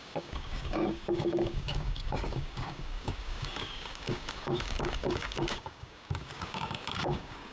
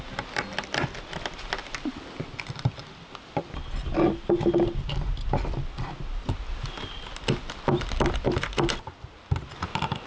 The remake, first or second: first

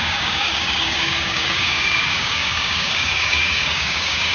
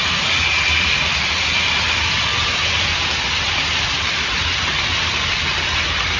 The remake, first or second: first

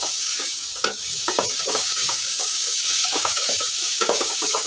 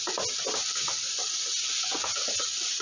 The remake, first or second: first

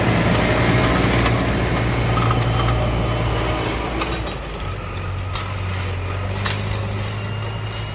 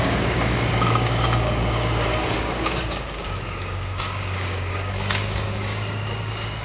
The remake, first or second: second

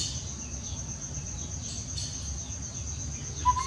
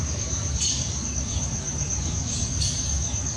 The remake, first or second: second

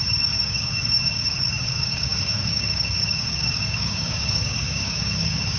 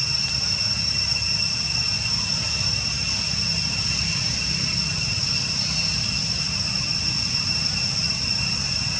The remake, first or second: first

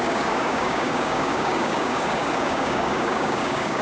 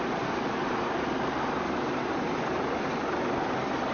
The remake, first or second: first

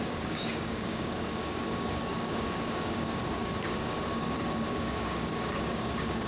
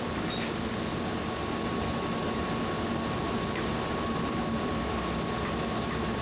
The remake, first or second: first